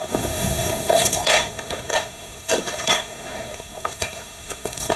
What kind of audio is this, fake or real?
fake